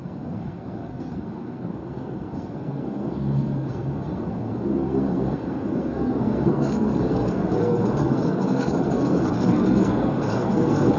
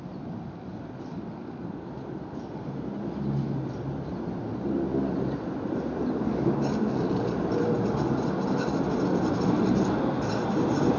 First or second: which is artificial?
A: first